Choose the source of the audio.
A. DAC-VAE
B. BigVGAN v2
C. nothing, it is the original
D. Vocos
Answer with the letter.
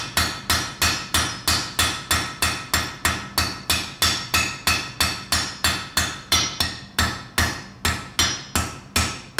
C